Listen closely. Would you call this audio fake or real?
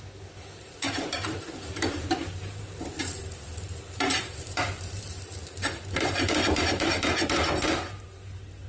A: fake